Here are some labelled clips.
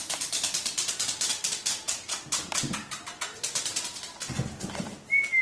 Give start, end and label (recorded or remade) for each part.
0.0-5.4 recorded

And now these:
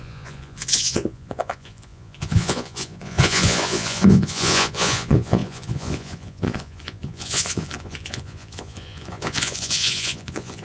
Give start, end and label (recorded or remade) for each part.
0.0-10.6 remade

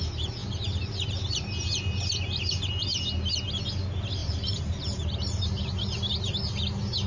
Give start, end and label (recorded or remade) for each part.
0.0-0.4 recorded; 0.4-2.6 remade; 2.6-4.2 recorded; 4.2-5.8 remade; 5.8-7.1 recorded

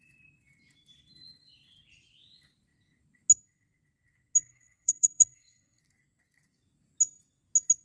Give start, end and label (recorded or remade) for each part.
0.0-4.4 recorded; 4.4-5.8 remade; 5.8-7.8 recorded

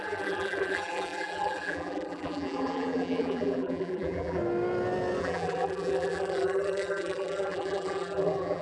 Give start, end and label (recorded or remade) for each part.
0.0-4.4 remade; 4.4-5.2 recorded; 5.2-8.6 remade